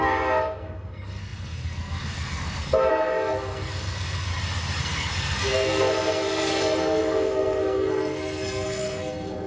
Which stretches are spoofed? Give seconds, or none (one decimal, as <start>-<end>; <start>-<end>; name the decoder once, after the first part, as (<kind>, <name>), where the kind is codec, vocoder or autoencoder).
0.0-4.3 (codec, SNAC); 4.8-9.5

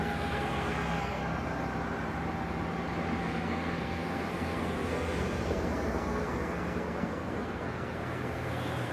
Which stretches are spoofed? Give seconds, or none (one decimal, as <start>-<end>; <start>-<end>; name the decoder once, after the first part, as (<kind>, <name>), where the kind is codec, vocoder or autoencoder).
0.0-1.2 (codec, SNAC); 3.2-8.9

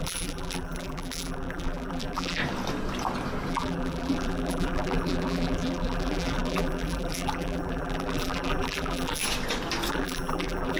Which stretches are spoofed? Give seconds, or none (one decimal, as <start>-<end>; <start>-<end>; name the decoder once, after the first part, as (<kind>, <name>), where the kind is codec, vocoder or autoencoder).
0.0-2.4 (vocoder, BigVGAN v2); 3.5-9.2; 9.9-10.8

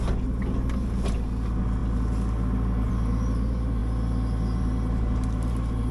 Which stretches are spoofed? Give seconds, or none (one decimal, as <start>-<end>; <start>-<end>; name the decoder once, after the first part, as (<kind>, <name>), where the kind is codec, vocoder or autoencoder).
none

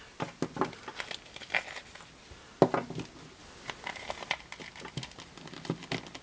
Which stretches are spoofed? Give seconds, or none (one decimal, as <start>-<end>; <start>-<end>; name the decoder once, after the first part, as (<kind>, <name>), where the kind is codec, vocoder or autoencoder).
none

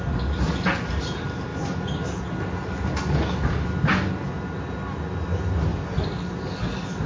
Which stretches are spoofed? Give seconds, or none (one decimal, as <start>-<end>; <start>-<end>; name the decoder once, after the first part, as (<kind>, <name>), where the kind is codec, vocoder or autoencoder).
none